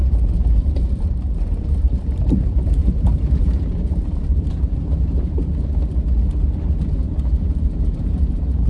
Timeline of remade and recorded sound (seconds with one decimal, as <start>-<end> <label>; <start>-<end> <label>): 0.0-5.4 remade; 5.4-6.7 recorded; 6.7-8.7 remade